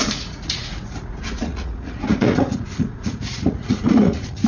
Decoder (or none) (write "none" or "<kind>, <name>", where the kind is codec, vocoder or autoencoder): vocoder, Vocos